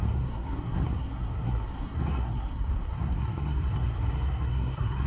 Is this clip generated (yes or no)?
yes